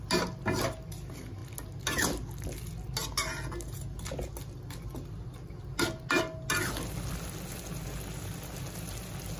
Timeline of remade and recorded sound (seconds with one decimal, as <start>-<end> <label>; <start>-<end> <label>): 0.0-9.4 recorded